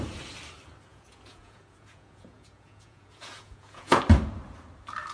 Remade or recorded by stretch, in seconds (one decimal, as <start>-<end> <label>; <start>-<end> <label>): 0.0-0.9 recorded; 0.9-4.0 remade; 4.0-5.1 recorded